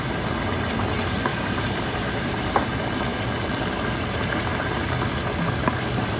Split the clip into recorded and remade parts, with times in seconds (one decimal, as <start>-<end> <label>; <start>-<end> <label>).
0.0-1.3 recorded; 1.3-2.4 remade; 2.4-6.2 recorded